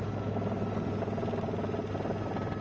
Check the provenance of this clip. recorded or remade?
recorded